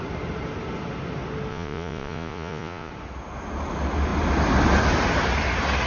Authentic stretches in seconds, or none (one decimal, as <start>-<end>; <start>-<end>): 0.0-1.5; 2.9-5.9